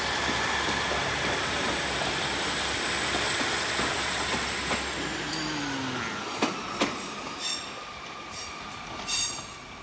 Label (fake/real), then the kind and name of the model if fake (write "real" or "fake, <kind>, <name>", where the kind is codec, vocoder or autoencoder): real